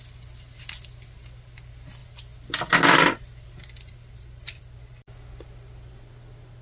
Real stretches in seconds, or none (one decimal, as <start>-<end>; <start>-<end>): 0.0-6.6

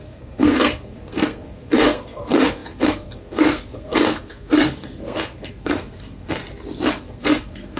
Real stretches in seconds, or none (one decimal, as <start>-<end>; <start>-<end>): 6.4-6.9

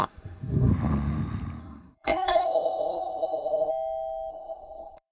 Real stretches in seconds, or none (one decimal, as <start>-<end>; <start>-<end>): 0.7-1.6; 3.7-4.3

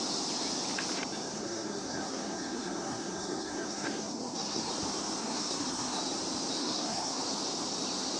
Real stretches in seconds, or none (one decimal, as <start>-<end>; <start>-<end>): 0.0-1.3; 4.7-5.2; 6.0-6.6; 7.2-8.2

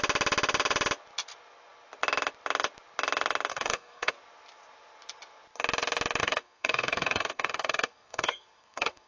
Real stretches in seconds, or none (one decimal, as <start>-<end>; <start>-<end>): 0.0-3.5; 4.1-6.2

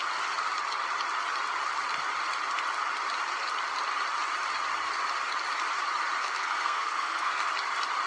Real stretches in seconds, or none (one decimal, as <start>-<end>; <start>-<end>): 0.0-6.2; 7.5-8.1

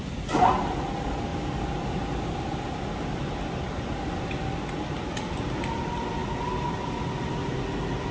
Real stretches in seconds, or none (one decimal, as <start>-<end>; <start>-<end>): 0.0-8.1

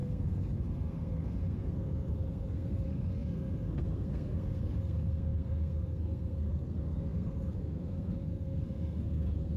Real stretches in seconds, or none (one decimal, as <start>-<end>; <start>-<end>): none